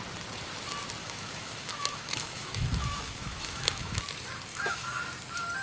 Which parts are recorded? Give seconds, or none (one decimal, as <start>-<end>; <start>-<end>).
0.0-1.0; 4.0-4.5; 5.0-5.6